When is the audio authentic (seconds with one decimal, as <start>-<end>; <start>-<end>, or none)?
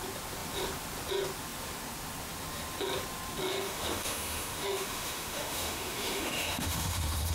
0.0-3.5